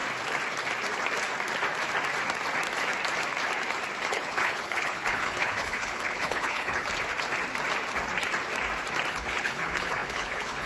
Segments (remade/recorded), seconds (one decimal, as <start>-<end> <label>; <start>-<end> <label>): 0.0-4.1 recorded; 4.1-6.9 remade; 6.9-9.1 recorded; 9.1-10.7 remade